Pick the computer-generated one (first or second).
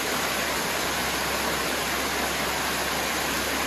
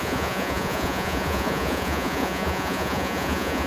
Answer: second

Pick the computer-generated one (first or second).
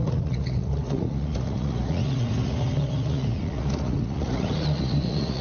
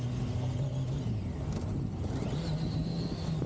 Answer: first